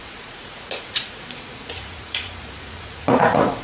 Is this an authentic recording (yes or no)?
no